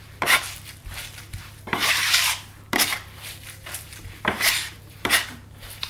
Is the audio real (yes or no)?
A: no